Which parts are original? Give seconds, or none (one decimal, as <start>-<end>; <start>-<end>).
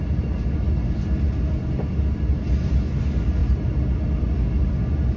0.0-5.2